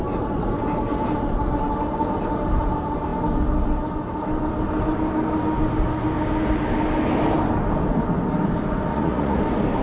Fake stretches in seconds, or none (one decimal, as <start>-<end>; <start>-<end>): 8.9-9.4